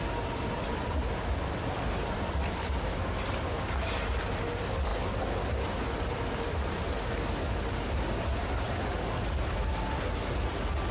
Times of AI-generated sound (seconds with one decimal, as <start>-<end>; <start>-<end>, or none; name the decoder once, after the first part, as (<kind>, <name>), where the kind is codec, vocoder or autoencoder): none

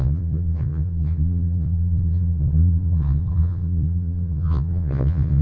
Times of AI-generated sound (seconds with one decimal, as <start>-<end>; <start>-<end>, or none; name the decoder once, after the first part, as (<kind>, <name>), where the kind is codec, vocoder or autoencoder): 0.0-5.4 (vocoder, Vocos)

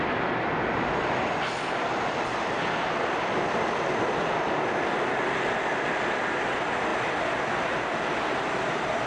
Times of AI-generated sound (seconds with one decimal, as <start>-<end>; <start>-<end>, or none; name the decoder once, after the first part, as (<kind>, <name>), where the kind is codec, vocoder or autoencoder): none

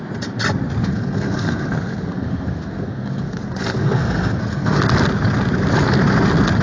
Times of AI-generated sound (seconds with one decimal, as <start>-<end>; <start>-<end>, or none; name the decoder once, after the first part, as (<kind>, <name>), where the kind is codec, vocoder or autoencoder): 0.8-4.8 (codec, SNAC)